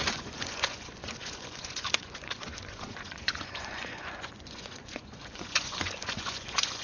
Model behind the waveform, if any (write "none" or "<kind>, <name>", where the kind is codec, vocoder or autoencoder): vocoder, Vocos